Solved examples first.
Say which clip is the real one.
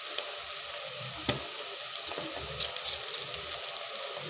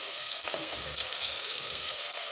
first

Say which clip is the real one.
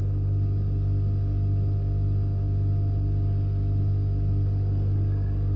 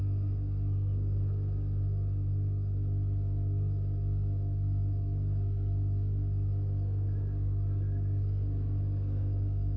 first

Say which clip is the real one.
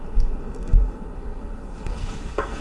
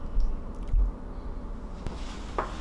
second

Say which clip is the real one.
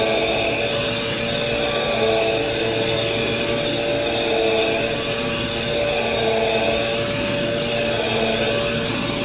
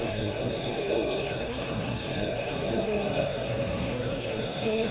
first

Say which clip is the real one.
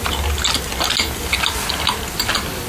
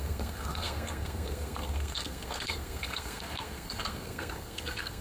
first